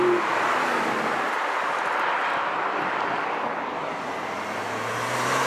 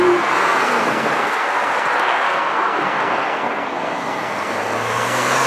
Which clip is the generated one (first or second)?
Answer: second